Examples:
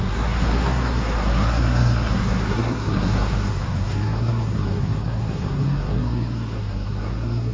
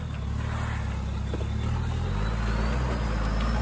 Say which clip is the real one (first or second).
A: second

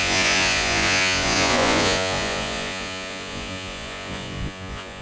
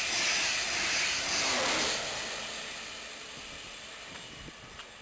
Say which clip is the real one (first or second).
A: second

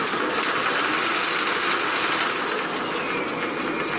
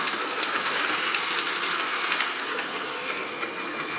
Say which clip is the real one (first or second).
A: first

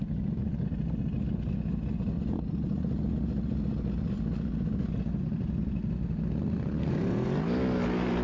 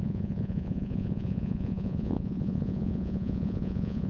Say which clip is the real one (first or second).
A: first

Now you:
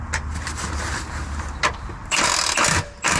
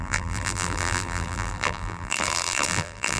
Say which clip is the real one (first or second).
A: first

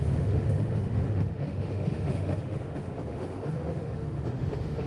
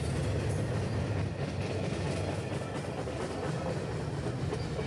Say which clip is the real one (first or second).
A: second